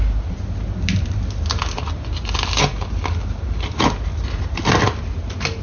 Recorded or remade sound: recorded